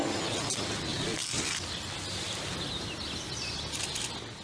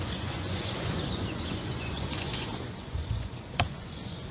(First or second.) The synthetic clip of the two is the second